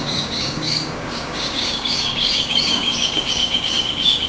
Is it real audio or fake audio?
fake